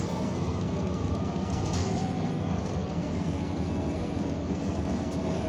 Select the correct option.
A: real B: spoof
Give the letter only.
B